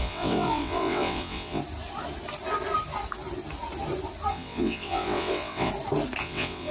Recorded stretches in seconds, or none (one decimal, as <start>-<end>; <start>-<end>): 1.6-4.3; 5.7-6.2

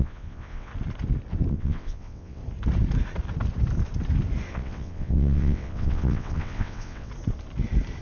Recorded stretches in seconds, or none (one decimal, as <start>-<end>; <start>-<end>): 0.7-1.5; 2.4-4.5; 7.1-8.0

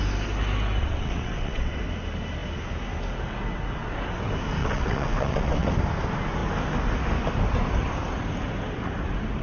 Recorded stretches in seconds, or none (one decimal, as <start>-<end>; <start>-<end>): 0.0-0.8; 1.8-4.6; 5.7-9.4

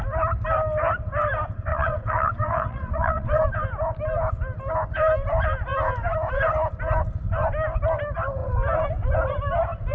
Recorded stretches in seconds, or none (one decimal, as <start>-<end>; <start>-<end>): 0.0-1.7; 3.4-9.9

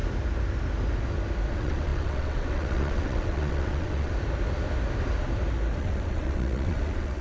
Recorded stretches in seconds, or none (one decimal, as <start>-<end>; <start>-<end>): 0.0-1.5; 4.1-5.8

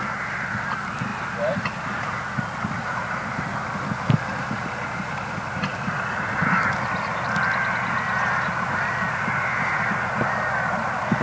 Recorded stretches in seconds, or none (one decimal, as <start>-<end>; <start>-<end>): 0.0-11.2